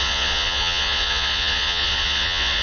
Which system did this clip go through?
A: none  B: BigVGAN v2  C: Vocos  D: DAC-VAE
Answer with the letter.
C